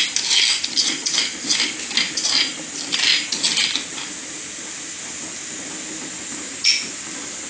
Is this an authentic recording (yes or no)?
yes